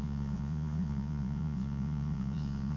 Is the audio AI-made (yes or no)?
yes